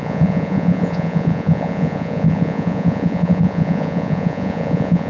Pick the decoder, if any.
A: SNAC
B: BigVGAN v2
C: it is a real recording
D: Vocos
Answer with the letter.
D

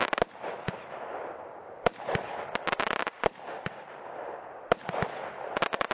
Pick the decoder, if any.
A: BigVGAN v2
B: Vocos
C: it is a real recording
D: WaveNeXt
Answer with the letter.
C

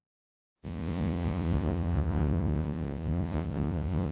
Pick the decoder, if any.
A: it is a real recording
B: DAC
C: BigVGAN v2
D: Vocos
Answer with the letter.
D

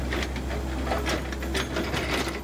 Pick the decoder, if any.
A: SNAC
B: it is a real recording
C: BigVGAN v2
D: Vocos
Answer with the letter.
B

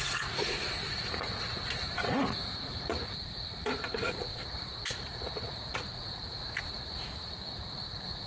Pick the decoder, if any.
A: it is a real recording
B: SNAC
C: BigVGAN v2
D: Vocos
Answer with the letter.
D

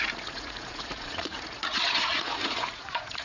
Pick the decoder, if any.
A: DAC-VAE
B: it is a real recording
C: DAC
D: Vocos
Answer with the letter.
D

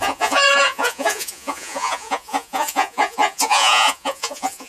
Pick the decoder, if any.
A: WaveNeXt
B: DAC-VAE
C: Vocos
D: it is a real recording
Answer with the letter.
C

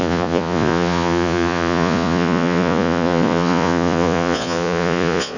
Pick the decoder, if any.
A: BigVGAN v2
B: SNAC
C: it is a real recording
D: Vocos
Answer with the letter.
D